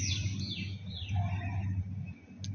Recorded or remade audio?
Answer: recorded